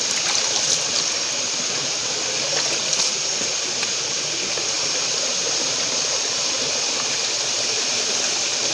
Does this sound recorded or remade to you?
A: recorded